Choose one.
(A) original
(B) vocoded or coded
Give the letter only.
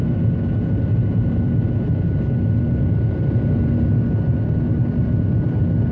A